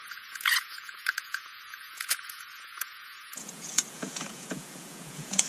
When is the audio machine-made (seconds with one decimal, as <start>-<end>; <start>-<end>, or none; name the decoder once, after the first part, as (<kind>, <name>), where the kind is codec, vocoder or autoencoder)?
0.0-5.5 (vocoder, Vocos)